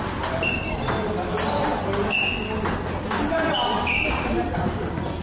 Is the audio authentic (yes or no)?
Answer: yes